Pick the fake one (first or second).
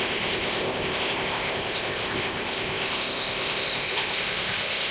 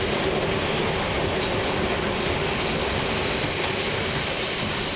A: first